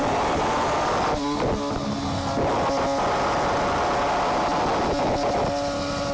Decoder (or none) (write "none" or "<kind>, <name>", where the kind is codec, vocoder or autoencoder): none